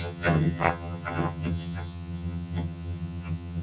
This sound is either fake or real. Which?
fake